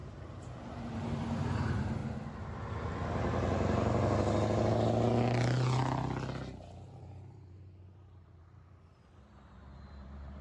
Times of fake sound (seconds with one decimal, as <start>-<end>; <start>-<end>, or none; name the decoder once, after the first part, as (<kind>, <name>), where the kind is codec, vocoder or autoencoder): 0.0-2.0 (vocoder, BigVGAN v2); 7.0-10.4